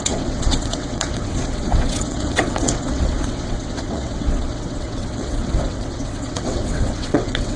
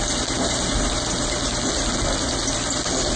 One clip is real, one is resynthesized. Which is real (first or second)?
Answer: second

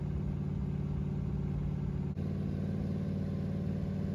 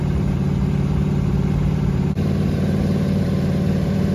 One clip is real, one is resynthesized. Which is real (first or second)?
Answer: first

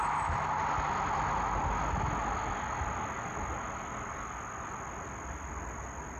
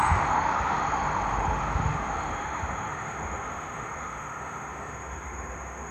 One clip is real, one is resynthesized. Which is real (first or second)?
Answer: first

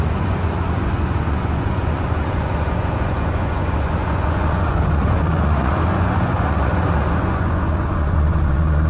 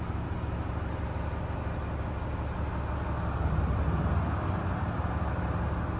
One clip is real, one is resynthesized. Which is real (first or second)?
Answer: second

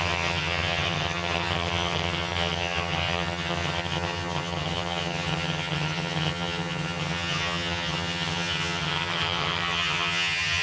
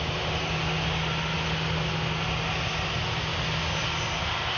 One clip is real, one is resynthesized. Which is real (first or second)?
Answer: second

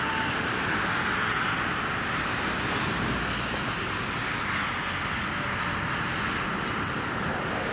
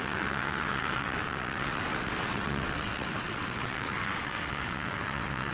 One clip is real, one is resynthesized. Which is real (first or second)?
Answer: first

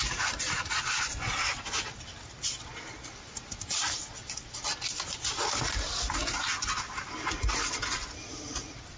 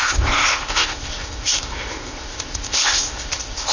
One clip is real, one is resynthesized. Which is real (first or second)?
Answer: first